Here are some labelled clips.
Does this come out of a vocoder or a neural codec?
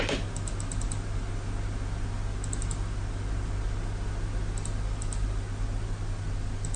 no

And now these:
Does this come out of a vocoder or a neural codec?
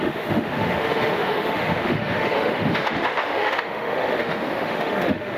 yes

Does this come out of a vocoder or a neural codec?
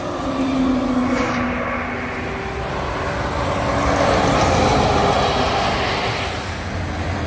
no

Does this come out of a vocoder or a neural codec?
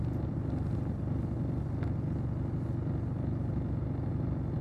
no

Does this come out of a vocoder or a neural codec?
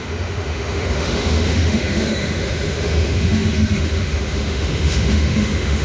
yes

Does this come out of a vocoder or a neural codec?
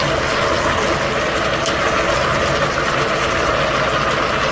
no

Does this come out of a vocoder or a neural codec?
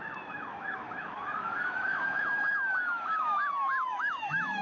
yes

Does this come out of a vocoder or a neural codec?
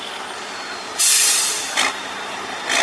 no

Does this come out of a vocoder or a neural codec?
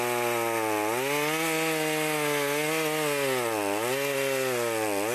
no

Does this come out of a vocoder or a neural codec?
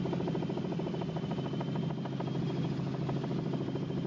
no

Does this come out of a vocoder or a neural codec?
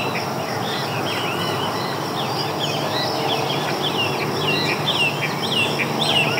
no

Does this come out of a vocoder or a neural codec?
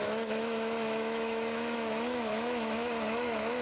yes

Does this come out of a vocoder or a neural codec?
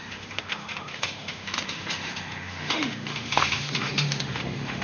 yes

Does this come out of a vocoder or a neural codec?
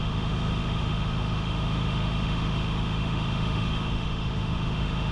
yes